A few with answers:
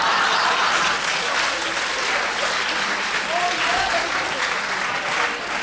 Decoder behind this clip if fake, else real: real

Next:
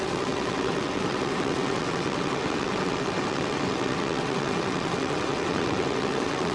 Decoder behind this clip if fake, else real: fake, vocoder, WaveNeXt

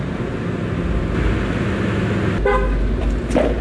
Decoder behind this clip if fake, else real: real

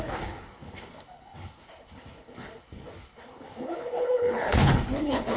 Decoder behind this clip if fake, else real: fake, codec, HILCodec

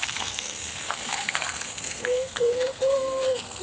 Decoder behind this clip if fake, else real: fake, codec, SNAC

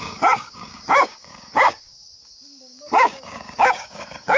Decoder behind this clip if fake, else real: fake, codec, DAC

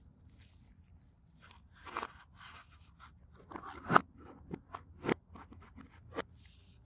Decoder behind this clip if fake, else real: real